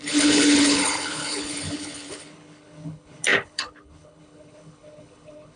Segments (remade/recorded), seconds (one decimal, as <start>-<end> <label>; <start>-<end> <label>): 0.0-5.6 remade